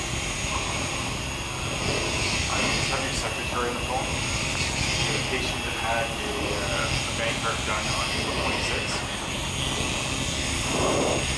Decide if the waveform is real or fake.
real